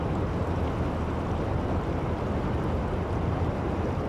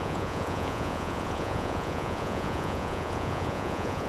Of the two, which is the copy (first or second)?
second